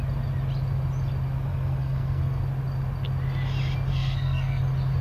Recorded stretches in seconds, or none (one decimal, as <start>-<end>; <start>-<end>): 0.0-1.5; 2.4-3.9; 4.6-5.0